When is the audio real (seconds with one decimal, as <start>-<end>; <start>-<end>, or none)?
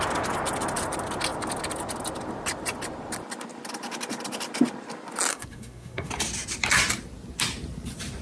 0.0-5.3; 6.1-8.2